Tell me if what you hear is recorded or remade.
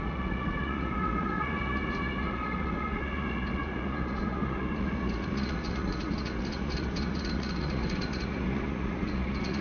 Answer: remade